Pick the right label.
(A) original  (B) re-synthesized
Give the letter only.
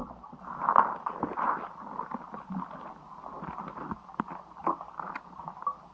A